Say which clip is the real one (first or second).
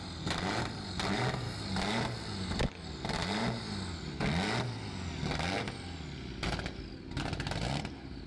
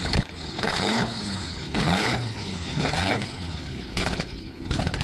first